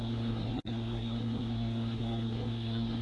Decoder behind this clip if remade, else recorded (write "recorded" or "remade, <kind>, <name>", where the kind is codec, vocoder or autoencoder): remade, codec, SNAC